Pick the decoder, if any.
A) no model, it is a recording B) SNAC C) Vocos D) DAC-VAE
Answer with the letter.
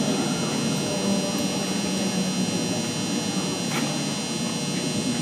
A